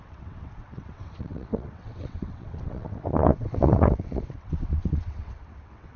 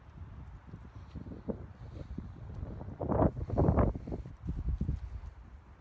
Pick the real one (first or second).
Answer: second